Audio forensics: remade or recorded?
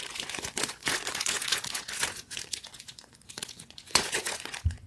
remade